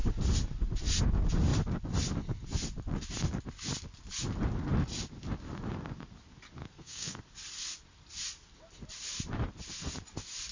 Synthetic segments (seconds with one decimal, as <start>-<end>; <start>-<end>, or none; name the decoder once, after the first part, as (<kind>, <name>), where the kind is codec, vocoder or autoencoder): 6.6-7.2 (codec, SNAC)